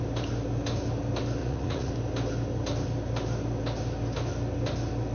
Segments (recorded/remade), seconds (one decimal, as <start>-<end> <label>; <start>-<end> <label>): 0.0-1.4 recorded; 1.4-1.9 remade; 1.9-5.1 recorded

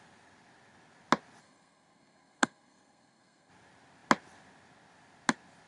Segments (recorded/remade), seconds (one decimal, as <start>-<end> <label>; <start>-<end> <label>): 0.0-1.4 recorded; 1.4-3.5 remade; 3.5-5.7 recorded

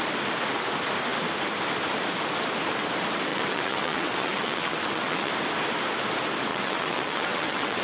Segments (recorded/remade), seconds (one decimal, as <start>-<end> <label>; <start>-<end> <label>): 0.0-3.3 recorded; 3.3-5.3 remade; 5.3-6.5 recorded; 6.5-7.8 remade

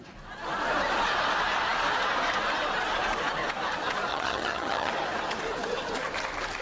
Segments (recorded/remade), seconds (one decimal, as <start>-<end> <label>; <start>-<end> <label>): 0.0-4.1 recorded; 4.1-4.9 remade; 4.9-6.6 recorded

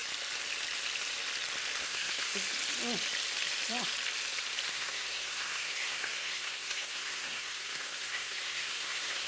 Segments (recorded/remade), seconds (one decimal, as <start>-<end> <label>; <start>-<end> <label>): 0.0-1.8 recorded; 1.8-2.3 remade; 2.3-4.7 recorded; 4.7-9.3 remade

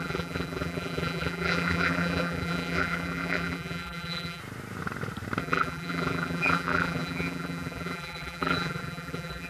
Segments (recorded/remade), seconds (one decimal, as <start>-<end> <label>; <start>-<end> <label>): 0.0-4.4 remade; 4.4-5.4 recorded; 5.4-9.5 remade

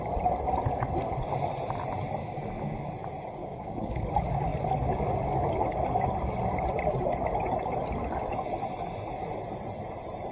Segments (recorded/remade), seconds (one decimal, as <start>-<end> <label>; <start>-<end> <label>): 0.0-2.2 recorded; 2.2-2.9 remade; 2.9-3.4 recorded; 3.4-4.0 remade; 4.0-10.3 recorded

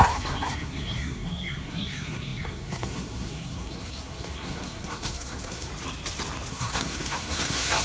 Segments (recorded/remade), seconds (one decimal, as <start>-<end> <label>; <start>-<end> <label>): 0.0-5.7 remade; 5.7-6.5 recorded; 6.5-7.8 remade